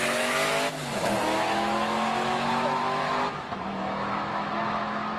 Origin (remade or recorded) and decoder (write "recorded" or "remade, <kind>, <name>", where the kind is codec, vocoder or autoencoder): remade, autoencoder, DAC-VAE